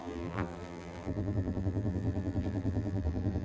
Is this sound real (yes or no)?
no